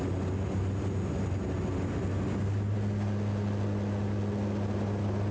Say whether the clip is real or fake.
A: real